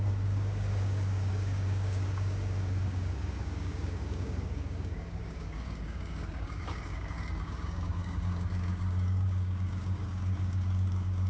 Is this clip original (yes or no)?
no